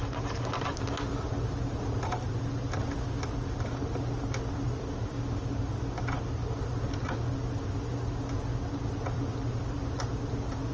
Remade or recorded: recorded